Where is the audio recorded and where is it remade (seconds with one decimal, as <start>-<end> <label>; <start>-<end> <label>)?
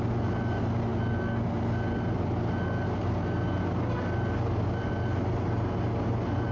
0.0-6.5 recorded